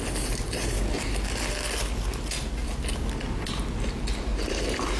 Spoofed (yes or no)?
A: no